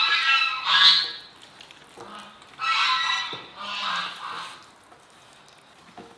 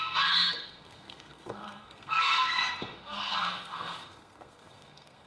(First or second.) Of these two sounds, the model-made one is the second